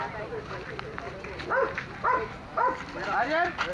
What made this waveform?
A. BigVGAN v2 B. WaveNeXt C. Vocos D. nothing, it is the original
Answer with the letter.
D